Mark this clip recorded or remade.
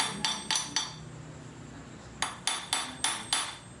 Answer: recorded